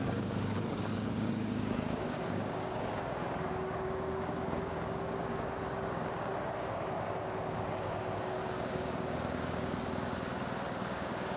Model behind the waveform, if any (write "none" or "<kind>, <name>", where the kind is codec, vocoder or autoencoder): codec, DAC